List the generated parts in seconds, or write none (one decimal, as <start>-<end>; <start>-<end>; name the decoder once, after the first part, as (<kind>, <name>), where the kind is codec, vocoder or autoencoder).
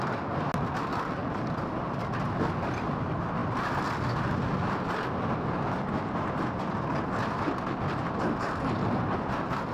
1.2-2.2 (vocoder, BigVGAN v2)